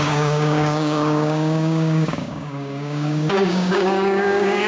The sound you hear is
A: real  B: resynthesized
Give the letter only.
B